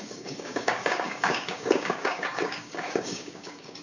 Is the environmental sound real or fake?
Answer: fake